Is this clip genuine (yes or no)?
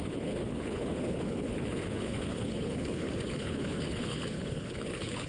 no